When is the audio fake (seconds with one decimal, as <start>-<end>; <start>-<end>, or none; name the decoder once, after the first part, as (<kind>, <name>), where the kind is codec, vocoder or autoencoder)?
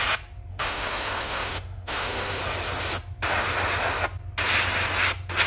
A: 0.5-2.4 (autoencoder, DAC-VAE)